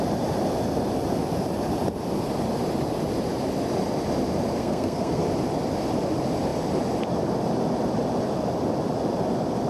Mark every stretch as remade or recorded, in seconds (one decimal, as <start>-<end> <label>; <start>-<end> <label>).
0.0-4.6 recorded; 4.6-5.2 remade; 5.2-9.7 recorded